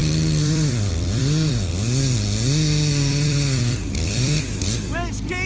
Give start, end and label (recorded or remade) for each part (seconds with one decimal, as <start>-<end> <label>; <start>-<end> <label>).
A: 0.0-1.7 remade; 1.7-3.1 recorded; 3.1-4.6 remade; 4.6-5.5 recorded